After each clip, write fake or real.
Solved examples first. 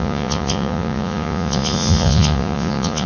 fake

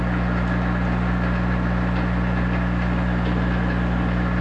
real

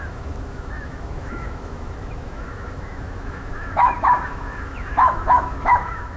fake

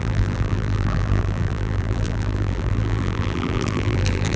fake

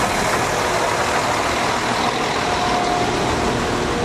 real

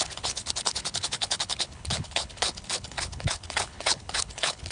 fake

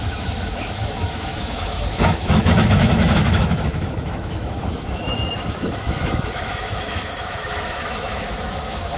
fake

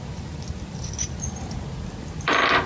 real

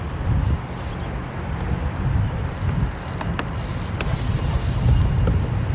real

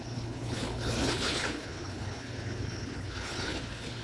fake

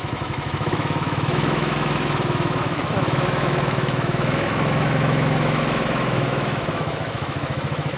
fake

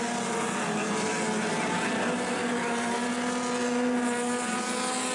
real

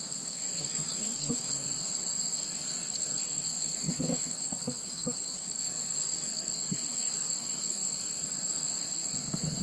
fake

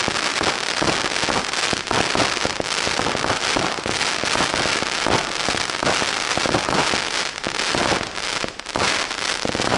real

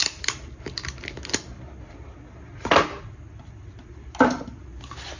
real